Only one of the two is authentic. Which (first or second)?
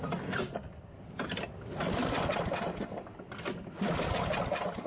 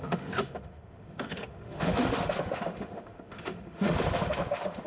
first